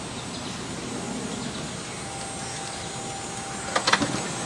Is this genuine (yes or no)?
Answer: yes